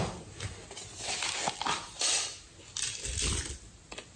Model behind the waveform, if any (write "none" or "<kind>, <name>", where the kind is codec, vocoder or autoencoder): none